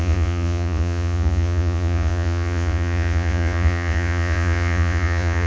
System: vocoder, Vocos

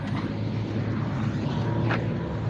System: none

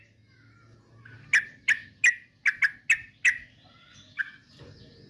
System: none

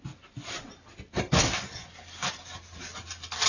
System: none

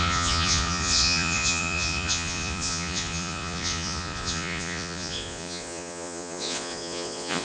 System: vocoder, Vocos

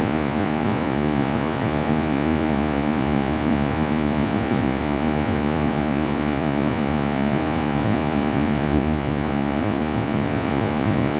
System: vocoder, Vocos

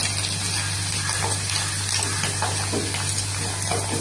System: none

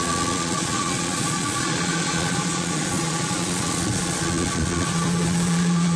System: vocoder, Vocos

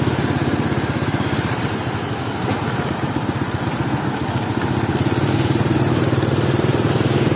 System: none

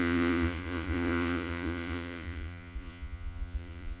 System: vocoder, Vocos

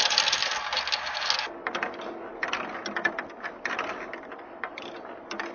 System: none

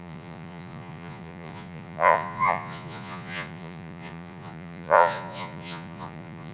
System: vocoder, Vocos